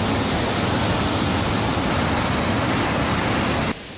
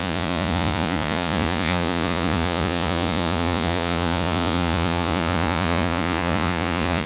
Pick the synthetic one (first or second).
second